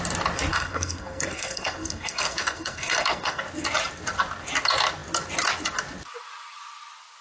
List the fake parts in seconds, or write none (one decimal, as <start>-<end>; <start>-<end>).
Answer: 0.5-3.4